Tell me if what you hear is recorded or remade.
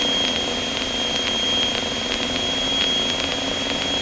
recorded